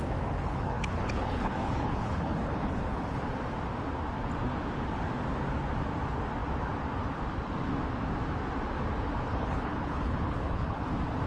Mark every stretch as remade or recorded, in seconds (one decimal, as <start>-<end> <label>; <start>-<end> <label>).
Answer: 0.0-0.4 recorded; 0.4-3.2 remade; 3.2-9.3 recorded; 9.3-10.9 remade; 10.9-11.3 recorded